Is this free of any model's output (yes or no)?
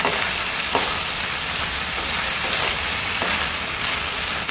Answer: yes